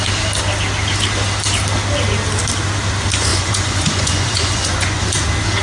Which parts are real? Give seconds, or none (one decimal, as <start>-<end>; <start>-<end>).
0.0-3.3; 5.0-5.6